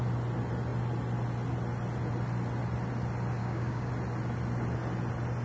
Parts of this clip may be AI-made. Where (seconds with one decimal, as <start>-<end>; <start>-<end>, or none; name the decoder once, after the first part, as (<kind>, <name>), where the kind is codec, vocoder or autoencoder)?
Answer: 3.4-3.9 (codec, DAC)